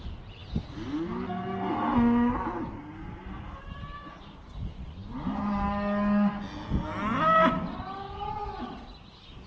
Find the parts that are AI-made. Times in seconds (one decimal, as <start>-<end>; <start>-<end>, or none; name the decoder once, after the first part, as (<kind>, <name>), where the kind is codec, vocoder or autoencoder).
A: none